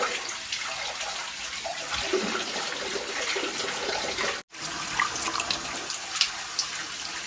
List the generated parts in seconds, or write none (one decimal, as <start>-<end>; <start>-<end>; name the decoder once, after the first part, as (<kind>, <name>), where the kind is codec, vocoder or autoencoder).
none

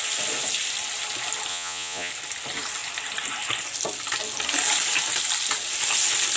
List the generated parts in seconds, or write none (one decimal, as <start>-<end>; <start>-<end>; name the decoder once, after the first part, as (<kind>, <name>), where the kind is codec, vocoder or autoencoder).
1.5-2.1 (vocoder, Vocos)

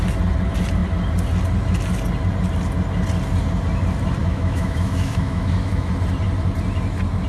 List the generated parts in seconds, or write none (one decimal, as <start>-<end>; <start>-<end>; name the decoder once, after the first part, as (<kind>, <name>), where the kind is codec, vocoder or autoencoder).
4.2-5.9 (autoencoder, DAC-VAE)

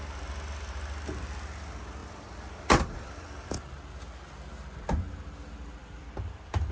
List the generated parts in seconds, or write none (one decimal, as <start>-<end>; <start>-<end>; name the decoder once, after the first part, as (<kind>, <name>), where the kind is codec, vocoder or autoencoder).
2.0-3.9 (vocoder, BigVGAN v2); 5.8-6.7

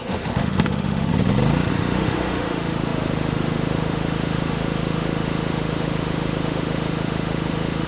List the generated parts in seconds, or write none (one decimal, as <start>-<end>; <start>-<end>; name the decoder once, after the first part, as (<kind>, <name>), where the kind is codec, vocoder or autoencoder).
0.0-1.1 (autoencoder, DAC-VAE); 1.7-7.9

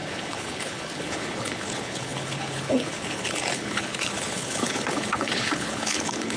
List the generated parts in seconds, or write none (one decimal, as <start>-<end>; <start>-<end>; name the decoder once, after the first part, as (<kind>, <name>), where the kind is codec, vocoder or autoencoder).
0.0-6.4 (codec, HILCodec)

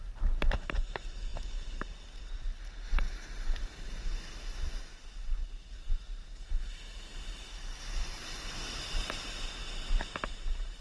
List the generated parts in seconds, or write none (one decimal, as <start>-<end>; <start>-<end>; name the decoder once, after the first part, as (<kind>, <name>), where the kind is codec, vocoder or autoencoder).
0.0-7.1 (vocoder, BigVGAN v2); 7.9-10.8

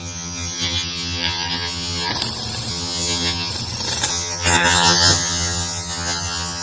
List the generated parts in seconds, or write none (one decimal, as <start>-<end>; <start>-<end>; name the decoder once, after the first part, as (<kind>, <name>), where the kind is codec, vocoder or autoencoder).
0.0-2.1 (vocoder, HiFi-GAN); 2.7-3.5; 4.1-6.6